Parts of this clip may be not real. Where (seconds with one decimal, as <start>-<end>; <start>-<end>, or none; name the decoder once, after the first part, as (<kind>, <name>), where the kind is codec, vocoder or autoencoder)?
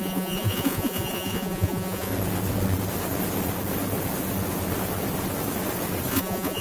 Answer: 0.0-2.1 (vocoder, Vocos); 6.1-6.6